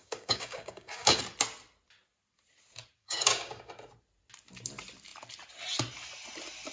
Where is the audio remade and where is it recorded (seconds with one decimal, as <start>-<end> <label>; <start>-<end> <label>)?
0.0-1.2 remade; 1.2-3.0 recorded; 3.0-3.7 remade; 3.7-6.7 recorded